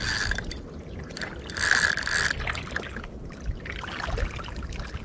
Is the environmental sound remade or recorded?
recorded